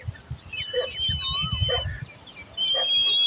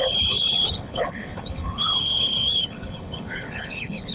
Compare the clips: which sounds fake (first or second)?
second